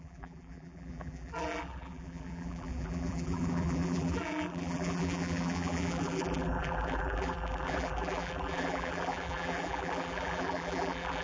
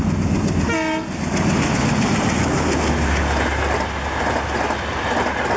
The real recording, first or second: second